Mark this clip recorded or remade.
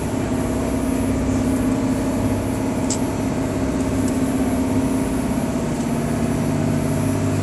recorded